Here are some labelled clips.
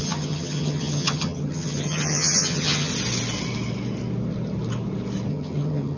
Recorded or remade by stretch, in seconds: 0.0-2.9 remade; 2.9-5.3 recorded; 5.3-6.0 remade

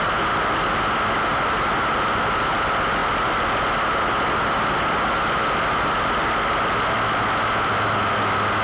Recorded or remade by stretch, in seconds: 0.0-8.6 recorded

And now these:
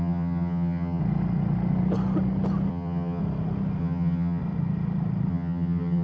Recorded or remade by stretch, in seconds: 0.0-1.0 remade; 1.0-2.7 recorded; 2.7-3.2 remade; 3.2-3.8 recorded; 3.8-4.4 remade; 4.4-5.3 recorded; 5.3-6.0 remade

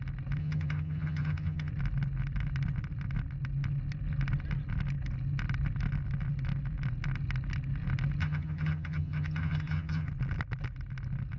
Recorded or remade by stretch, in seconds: 0.0-0.4 recorded; 0.4-1.7 remade; 1.7-8.2 recorded; 8.2-10.1 remade; 10.1-11.4 recorded

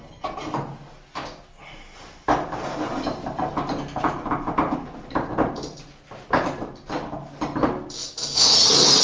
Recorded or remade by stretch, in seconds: 0.0-9.0 recorded

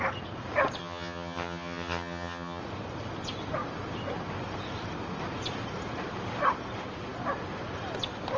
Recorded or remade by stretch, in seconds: 0.0-0.8 recorded; 0.8-2.6 remade; 2.6-8.4 recorded